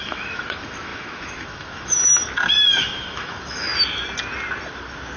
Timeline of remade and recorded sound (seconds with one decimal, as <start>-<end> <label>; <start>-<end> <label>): 0.0-2.2 remade; 2.2-2.8 recorded; 2.8-3.7 remade; 3.7-5.2 recorded